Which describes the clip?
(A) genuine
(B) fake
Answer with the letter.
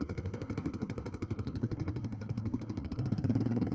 B